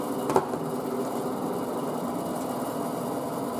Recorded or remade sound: recorded